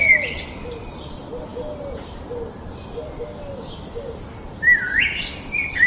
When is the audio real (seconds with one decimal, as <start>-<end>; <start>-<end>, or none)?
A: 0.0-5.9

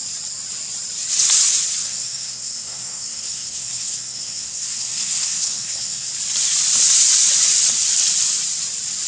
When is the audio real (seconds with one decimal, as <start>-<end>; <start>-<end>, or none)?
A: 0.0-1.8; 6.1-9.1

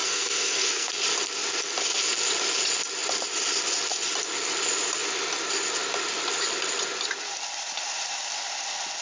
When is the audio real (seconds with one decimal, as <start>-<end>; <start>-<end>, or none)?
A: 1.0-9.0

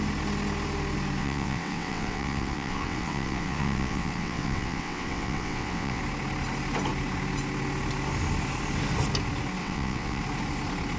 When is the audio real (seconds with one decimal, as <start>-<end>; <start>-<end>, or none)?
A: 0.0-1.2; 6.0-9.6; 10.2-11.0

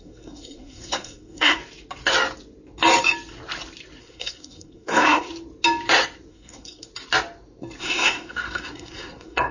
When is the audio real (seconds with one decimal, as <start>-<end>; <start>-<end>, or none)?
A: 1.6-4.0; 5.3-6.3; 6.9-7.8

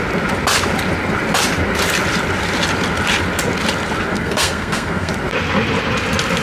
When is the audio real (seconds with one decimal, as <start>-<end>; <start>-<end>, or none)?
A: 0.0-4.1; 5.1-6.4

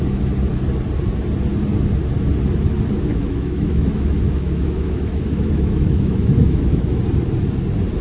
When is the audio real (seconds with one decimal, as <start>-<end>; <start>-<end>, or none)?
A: 0.0-3.1; 7.0-8.0